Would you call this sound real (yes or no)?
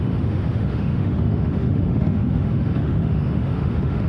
no